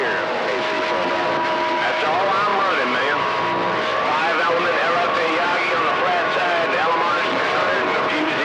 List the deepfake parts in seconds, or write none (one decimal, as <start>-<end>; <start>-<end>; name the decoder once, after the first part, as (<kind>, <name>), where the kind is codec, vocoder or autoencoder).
2.5-3.4 (vocoder, BigVGAN v2); 4.2-5.7; 6.4-8.4